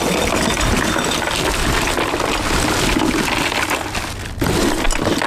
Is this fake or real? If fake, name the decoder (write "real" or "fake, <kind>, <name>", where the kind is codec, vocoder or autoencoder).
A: real